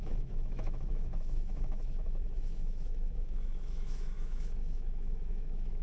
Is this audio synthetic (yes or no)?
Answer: yes